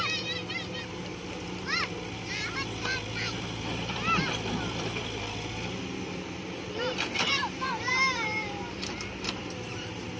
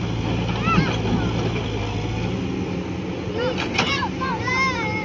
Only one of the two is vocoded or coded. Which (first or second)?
first